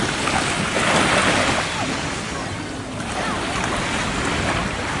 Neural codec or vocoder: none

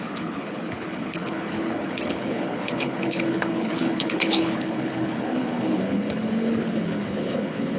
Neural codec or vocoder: codec, HILCodec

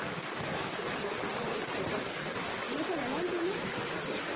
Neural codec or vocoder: none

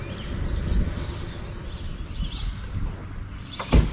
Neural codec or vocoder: none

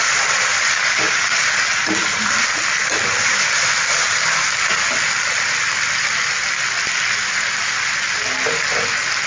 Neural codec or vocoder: none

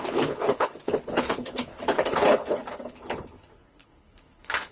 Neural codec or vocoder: codec, HILCodec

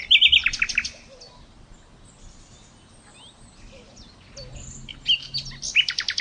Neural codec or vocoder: none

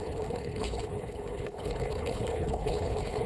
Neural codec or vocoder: codec, HILCodec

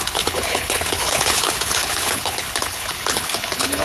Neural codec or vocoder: codec, HILCodec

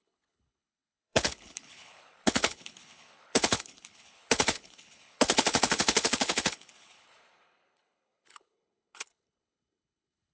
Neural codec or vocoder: codec, HILCodec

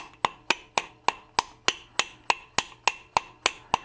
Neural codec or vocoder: none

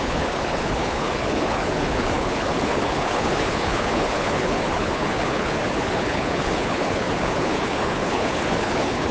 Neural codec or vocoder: codec, HILCodec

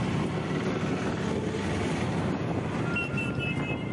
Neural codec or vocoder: none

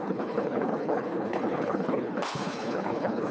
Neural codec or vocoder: codec, HILCodec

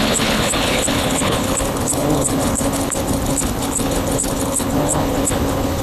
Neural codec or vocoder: codec, HILCodec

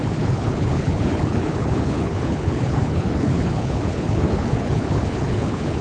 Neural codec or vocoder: codec, HILCodec